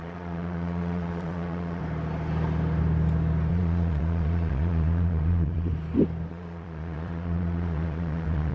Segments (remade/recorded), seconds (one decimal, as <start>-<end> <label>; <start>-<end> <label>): 0.0-1.8 remade; 1.8-3.5 recorded; 3.5-5.7 remade; 5.7-6.3 recorded; 6.3-8.5 remade